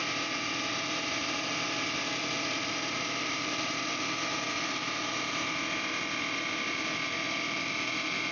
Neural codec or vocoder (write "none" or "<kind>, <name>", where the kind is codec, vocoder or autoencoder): none